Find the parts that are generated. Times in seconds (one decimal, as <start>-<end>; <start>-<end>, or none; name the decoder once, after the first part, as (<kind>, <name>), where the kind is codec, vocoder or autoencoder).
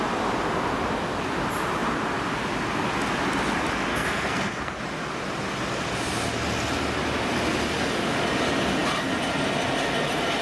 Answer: 3.9-4.8 (codec, SNAC)